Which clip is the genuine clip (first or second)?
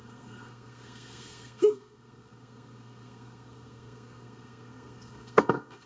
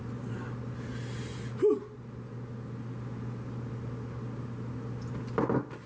second